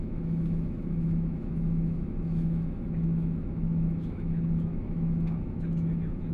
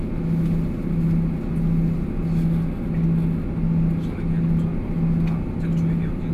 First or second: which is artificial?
first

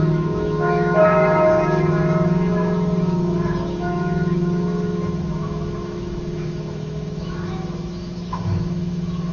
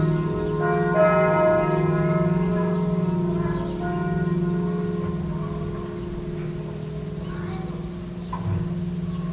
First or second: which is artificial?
first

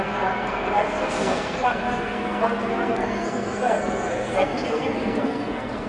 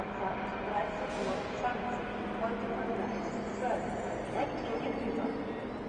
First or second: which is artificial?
first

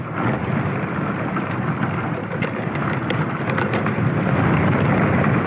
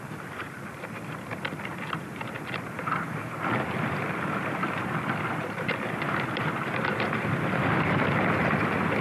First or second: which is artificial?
second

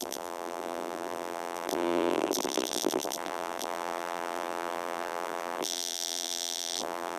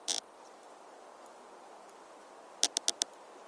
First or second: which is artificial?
first